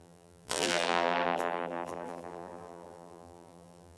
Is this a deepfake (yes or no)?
yes